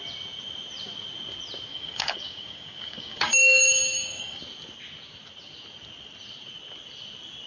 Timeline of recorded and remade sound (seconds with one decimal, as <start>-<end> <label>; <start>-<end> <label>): 0.0-1.7 recorded; 1.7-4.4 remade; 4.4-7.5 recorded